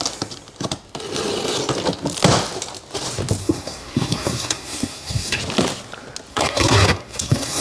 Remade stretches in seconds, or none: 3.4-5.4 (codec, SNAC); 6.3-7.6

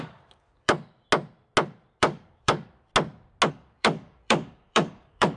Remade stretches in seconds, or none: 0.0-0.9 (codec, DAC); 2.0-2.9; 3.5-5.4